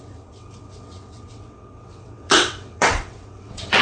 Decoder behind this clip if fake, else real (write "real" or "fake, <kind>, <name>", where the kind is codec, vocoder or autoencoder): fake, vocoder, WaveNeXt